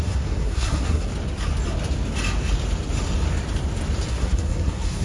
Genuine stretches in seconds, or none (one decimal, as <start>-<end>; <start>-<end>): 1.1-4.1